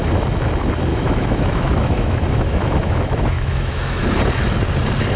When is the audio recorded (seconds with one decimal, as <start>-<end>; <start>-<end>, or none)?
0.0-0.9; 4.0-5.2